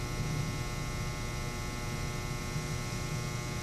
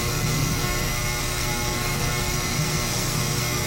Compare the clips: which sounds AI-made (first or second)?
second